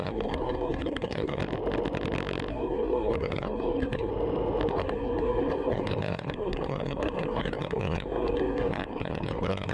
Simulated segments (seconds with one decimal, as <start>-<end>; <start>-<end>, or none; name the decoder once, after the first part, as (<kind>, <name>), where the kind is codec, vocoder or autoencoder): 0.0-1.4 (codec, SNAC); 2.5-4.1; 4.7-9.7